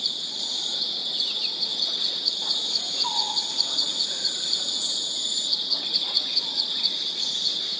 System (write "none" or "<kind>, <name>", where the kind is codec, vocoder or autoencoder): vocoder, Vocos